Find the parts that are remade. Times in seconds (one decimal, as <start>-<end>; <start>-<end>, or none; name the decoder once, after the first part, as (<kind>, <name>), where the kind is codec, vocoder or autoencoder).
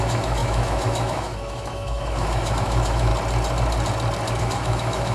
0.0-3.1 (autoencoder, DAC-VAE); 4.4-5.1